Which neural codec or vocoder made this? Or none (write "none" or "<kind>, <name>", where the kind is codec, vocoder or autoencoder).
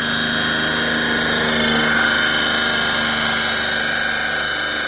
none